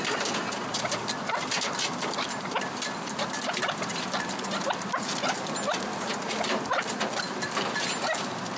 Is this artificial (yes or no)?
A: no